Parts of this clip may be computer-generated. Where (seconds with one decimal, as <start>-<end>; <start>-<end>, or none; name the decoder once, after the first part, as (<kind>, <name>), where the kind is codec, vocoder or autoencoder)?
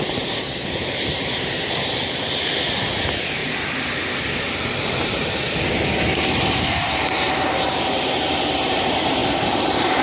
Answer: 0.0-3.4 (vocoder, BigVGAN v2); 5.0-10.0